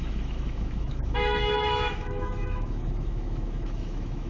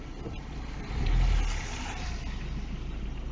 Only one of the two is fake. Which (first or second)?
first